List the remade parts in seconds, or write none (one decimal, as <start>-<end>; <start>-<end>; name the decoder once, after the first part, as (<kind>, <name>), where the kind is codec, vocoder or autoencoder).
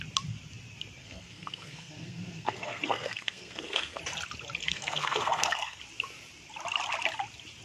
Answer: 1.0-4.0 (codec, SNAC); 4.6-5.8